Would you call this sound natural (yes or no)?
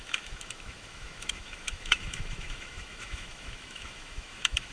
no